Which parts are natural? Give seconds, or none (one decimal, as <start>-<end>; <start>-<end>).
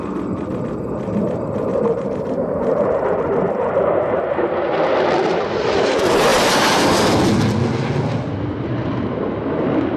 0.0-1.7; 4.5-10.0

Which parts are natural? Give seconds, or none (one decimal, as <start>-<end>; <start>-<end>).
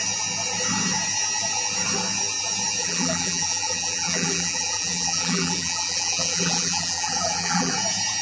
0.0-2.8; 7.7-8.2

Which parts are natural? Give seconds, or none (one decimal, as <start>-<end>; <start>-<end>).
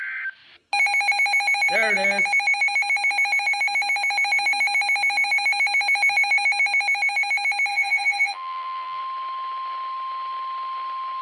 0.0-7.7; 9.0-11.2